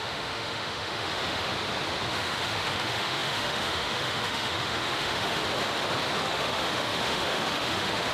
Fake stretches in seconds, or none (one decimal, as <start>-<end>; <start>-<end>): 0.0-1.5; 2.1-5.4; 6.2-8.1